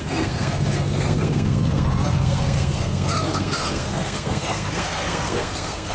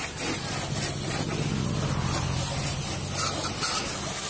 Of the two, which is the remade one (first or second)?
first